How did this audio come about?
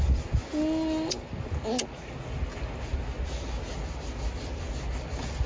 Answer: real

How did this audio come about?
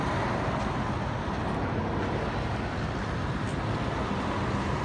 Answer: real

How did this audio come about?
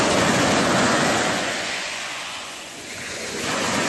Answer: fake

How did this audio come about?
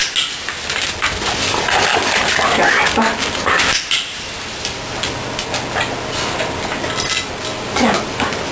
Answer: real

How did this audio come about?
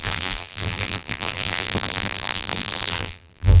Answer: fake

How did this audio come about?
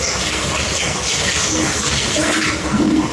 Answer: fake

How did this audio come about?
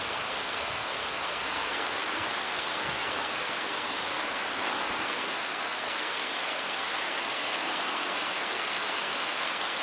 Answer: fake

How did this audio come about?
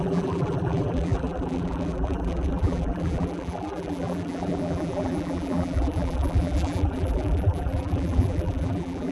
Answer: fake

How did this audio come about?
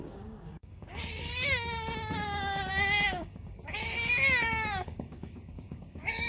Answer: fake